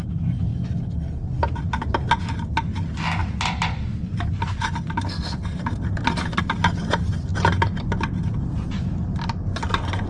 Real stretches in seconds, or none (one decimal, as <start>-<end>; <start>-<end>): 0.0-0.5; 1.6-3.2; 6.4-10.1